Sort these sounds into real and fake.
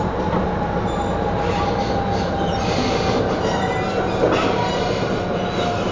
real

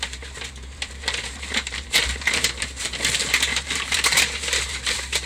fake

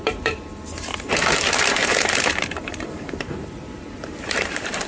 fake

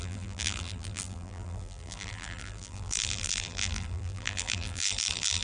fake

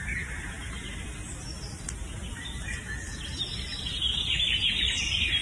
real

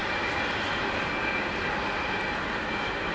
real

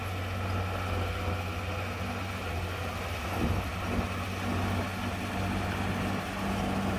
real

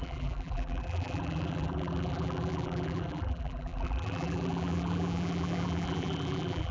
fake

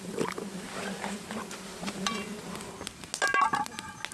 real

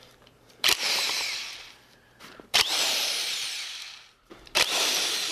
fake